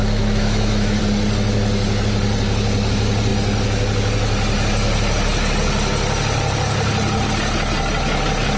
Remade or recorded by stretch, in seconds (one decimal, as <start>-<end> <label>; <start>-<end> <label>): 0.0-1.0 remade; 1.0-8.6 recorded